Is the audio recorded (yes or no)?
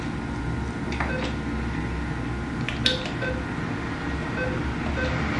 yes